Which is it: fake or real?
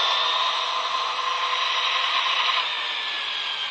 real